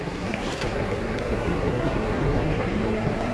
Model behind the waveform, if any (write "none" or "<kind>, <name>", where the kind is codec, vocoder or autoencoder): codec, SNAC